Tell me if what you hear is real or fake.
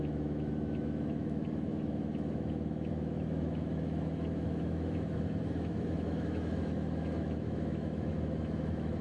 fake